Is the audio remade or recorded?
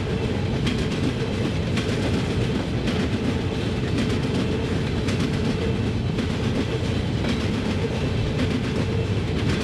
recorded